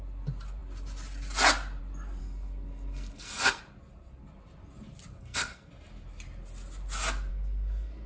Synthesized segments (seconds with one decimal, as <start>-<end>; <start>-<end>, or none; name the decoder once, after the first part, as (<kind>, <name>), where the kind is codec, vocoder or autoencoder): 2.2-3.6 (codec, SNAC); 5.2-5.7; 7.3-8.1